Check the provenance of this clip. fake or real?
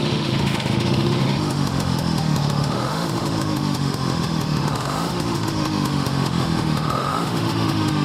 fake